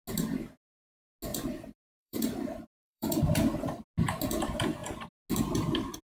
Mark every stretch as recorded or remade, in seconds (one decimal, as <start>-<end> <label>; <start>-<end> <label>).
0.0-1.3 recorded; 1.3-3.2 remade; 3.2-6.1 recorded